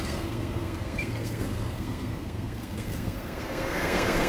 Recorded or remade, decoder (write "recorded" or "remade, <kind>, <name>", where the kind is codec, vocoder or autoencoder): remade, codec, SNAC